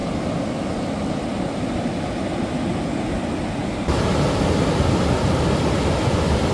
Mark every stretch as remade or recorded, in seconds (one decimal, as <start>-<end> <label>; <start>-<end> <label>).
0.0-3.6 recorded; 3.6-4.4 remade; 4.4-6.5 recorded